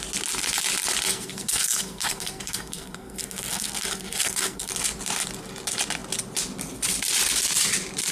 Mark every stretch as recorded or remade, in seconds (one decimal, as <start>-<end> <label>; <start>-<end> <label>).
0.0-1.1 recorded; 1.1-4.7 remade; 4.7-8.1 recorded